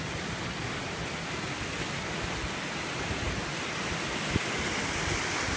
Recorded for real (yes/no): yes